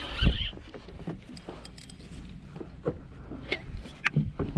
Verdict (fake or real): real